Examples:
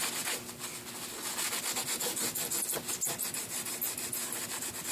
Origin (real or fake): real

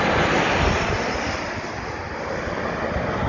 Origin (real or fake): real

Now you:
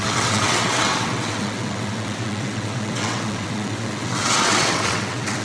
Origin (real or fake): fake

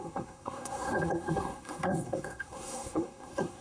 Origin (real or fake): fake